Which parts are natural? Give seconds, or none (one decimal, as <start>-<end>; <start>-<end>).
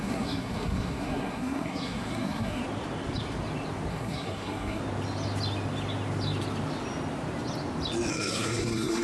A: 2.6-3.9; 4.8-8.1